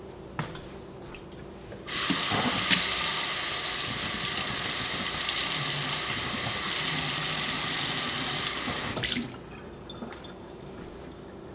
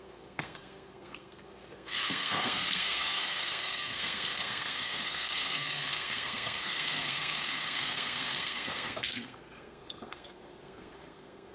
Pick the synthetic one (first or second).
second